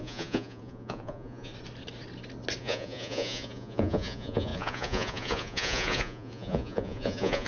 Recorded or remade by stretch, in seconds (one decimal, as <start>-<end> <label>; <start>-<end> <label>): 0.0-1.5 remade; 1.5-2.6 recorded; 2.6-7.5 remade